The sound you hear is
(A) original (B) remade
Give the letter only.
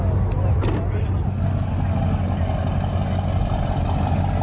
A